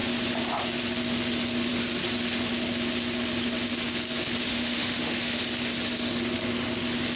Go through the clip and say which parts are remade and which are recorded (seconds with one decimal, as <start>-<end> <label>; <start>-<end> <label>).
0.0-4.5 recorded; 4.5-5.4 remade; 5.4-7.2 recorded

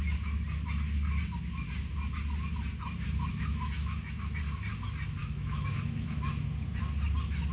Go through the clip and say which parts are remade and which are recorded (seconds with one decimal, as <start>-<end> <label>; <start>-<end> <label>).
0.0-3.3 recorded; 3.3-4.4 remade; 4.4-5.2 recorded; 5.2-6.3 remade; 6.3-7.5 recorded

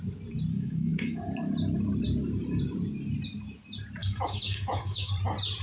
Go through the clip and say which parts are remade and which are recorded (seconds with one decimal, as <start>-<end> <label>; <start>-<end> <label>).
0.0-0.5 recorded; 0.5-1.2 remade; 1.2-4.0 recorded; 4.0-5.1 remade; 5.1-5.6 recorded

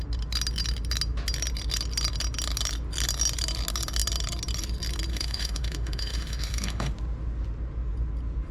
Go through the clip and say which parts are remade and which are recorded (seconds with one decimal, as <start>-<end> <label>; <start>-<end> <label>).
0.0-5.1 recorded; 5.1-6.9 remade; 6.9-8.5 recorded

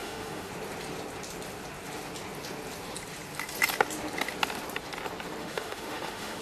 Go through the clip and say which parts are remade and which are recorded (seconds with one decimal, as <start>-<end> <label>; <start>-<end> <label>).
0.0-0.5 remade; 0.5-5.4 recorded; 5.4-6.4 remade